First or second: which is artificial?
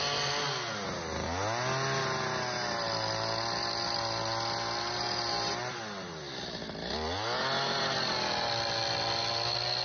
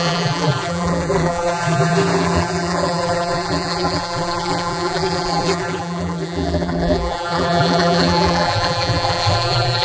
second